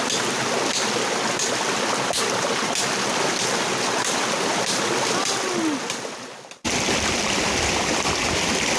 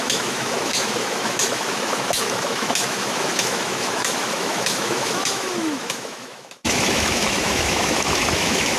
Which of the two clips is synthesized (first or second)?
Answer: second